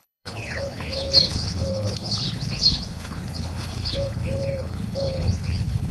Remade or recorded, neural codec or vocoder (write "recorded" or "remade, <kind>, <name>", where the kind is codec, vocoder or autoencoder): remade, codec, HILCodec